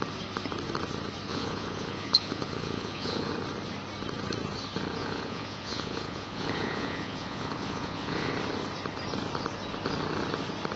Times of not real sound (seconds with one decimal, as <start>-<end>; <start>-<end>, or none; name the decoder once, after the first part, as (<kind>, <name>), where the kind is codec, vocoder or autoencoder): 1.3-3.3 (vocoder, Vocos); 5.0-8.3